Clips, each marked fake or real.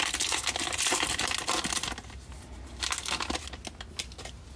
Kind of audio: real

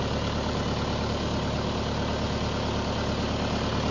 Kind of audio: real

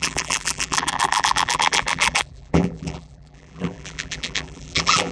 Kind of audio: fake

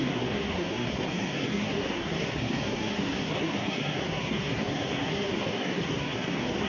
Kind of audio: fake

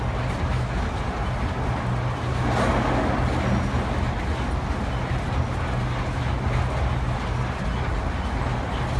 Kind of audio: real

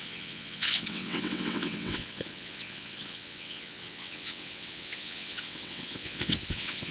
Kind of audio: fake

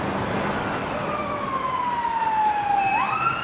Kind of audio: real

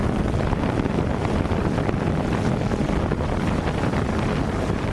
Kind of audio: real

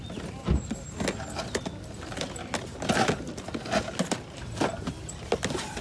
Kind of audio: real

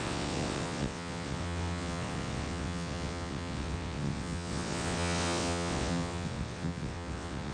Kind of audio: fake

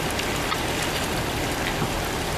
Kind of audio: real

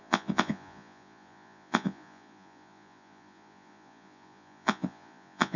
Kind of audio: fake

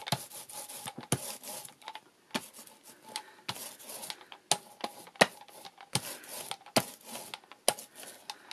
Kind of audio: real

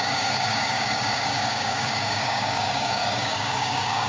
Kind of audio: fake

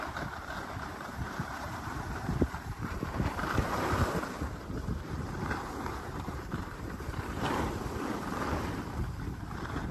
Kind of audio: fake